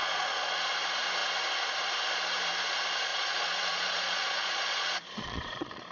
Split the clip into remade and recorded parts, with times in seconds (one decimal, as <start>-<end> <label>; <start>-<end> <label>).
0.0-0.7 remade; 0.7-3.1 recorded; 3.1-5.9 remade